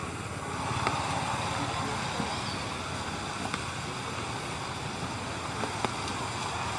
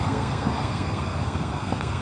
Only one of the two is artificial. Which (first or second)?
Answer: second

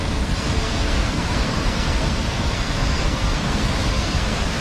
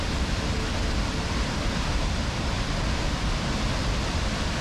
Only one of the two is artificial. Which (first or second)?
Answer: first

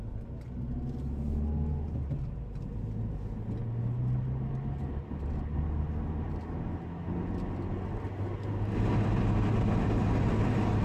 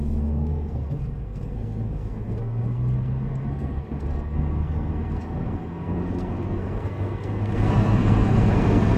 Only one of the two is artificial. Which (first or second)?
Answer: second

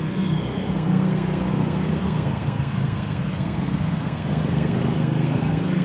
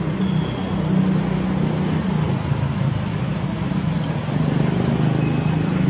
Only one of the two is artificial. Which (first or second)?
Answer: first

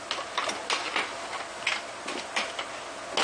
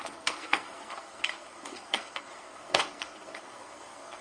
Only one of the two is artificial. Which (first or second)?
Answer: second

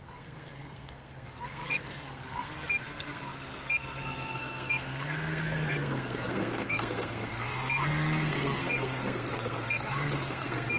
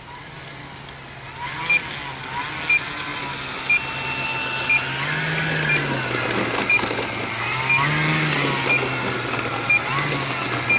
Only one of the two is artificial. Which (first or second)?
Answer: first